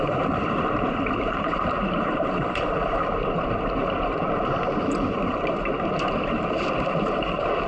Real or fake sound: fake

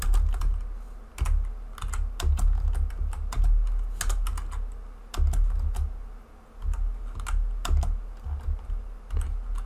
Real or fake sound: real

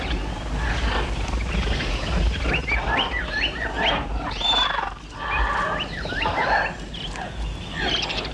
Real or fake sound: real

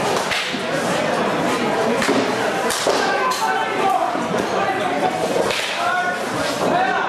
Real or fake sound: fake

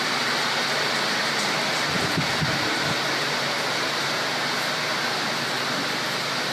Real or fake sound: fake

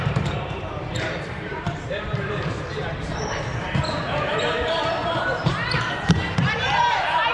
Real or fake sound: fake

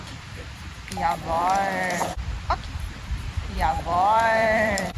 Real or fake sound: fake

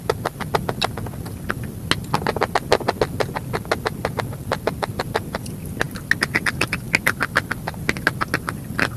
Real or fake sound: real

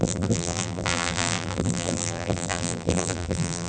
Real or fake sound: fake